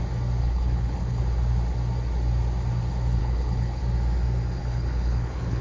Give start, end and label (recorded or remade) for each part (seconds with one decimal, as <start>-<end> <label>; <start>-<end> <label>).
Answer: 0.0-0.4 recorded; 0.4-1.2 remade; 1.2-3.2 recorded; 3.2-3.8 remade; 3.8-4.6 recorded; 4.6-5.6 remade